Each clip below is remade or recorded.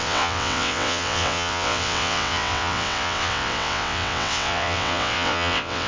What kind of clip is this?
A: remade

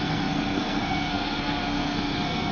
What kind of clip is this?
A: remade